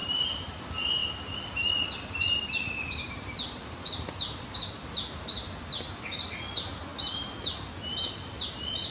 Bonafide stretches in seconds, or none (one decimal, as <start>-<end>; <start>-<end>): 0.6-8.9